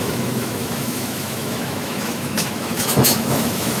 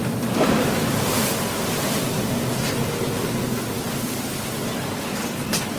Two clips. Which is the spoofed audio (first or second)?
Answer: first